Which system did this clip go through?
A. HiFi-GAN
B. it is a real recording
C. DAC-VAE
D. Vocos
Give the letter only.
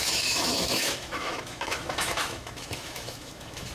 C